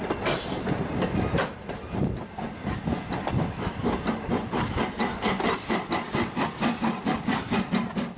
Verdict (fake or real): real